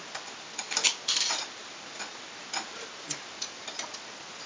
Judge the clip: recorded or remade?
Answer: recorded